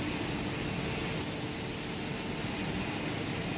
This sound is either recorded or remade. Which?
recorded